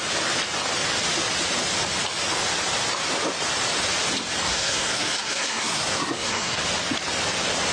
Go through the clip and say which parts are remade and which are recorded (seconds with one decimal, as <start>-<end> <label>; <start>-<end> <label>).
0.0-4.5 recorded; 4.5-6.6 remade; 6.6-7.7 recorded